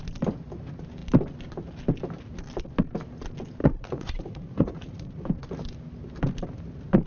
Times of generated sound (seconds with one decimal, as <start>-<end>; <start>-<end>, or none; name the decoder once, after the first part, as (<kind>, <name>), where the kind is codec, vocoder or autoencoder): 3.6-5.2 (vocoder, Vocos)